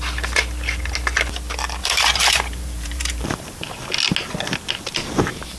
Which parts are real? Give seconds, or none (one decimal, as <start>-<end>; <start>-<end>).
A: 0.0-1.8; 3.7-5.6